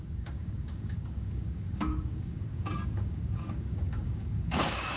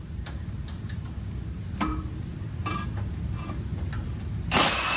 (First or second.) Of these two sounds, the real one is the second